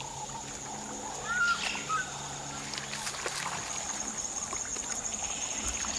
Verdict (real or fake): real